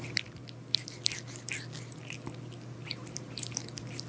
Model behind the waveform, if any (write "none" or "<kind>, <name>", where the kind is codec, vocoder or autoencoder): none